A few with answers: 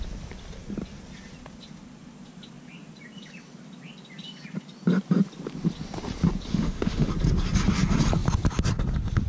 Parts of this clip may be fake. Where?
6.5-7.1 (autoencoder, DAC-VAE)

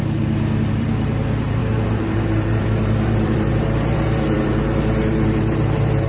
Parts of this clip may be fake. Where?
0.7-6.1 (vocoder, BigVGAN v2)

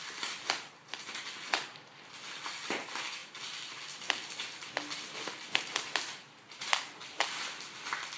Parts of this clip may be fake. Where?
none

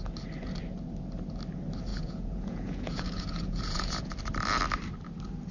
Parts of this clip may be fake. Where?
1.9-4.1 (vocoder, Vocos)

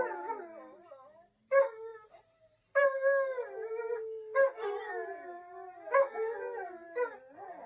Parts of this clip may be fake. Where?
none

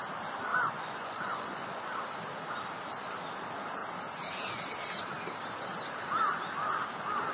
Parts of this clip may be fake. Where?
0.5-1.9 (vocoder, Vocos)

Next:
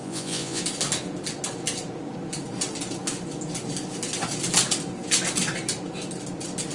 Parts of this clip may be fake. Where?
0.0-0.6 (vocoder, Vocos)

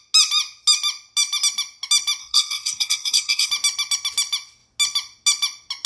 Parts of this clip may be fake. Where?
2.2-3.5 (codec, SNAC)